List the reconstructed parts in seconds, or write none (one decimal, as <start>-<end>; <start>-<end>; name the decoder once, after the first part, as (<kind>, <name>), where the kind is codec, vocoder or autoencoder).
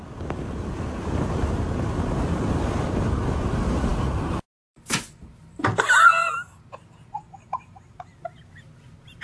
0.0-0.6 (vocoder, BigVGAN v2)